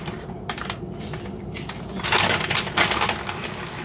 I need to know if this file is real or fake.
real